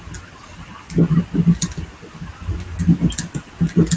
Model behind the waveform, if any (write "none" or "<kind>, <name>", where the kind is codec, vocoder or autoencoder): none